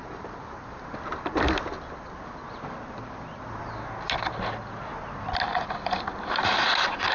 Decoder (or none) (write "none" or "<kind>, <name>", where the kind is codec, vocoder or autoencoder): none